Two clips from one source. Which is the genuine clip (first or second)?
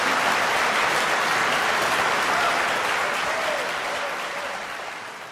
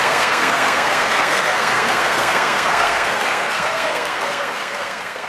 first